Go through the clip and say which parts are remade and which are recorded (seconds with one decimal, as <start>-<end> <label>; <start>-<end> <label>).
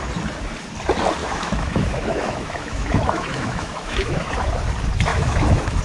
0.0-1.2 recorded; 1.2-4.3 remade; 4.3-5.1 recorded; 5.1-5.8 remade